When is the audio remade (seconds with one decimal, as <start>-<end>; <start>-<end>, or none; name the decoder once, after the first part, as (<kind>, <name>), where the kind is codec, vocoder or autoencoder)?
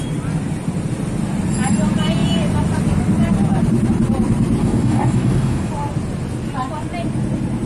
4.6-5.7 (codec, DAC)